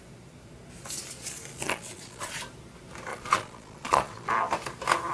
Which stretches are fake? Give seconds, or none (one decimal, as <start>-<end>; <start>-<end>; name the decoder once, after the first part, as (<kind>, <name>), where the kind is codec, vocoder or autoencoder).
1.5-2.4 (vocoder, Vocos); 3.1-4.3